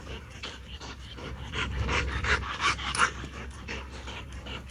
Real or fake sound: fake